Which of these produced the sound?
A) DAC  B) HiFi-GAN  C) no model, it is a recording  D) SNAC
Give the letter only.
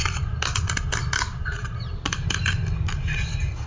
C